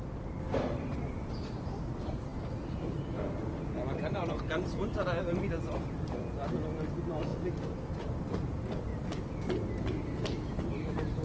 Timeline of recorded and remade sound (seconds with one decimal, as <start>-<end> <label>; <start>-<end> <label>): 0.0-11.2 recorded